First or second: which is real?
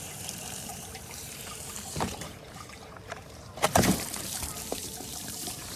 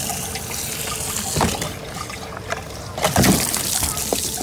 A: second